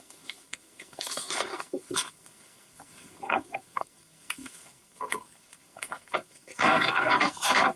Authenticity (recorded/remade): remade